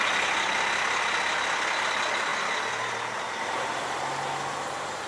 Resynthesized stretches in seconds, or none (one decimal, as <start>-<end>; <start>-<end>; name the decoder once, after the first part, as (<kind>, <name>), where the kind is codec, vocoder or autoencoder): none